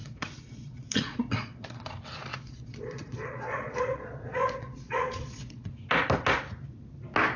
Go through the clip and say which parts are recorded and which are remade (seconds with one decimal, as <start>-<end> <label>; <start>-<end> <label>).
0.0-1.9 remade; 1.9-2.3 recorded; 2.3-5.7 remade; 5.7-7.4 recorded